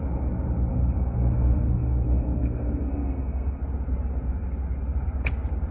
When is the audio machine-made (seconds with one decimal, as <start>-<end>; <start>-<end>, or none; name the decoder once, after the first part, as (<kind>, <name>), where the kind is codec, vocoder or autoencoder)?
0.7-3.6 (codec, SNAC)